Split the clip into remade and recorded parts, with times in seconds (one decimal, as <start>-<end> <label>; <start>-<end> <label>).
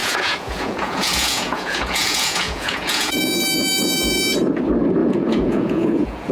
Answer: 0.0-3.2 remade; 3.2-5.0 recorded; 5.0-6.3 remade